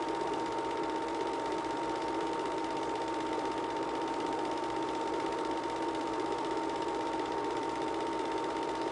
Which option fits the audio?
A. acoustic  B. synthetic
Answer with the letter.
B